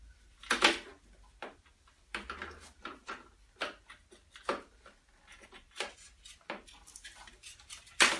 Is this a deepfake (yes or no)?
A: no